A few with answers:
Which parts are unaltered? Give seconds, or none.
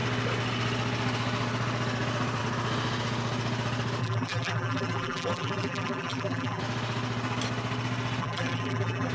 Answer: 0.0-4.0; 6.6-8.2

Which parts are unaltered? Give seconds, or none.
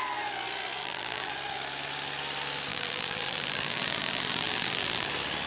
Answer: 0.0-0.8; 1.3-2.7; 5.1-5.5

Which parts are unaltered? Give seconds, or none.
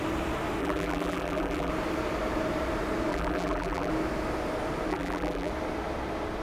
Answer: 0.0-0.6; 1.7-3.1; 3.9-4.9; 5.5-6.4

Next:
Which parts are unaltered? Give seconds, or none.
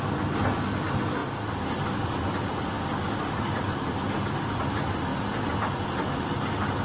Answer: 0.0-6.8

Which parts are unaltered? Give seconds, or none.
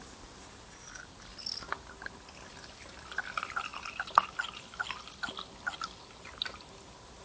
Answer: 0.0-7.2